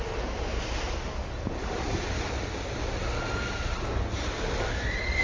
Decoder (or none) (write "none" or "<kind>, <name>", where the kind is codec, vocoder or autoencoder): none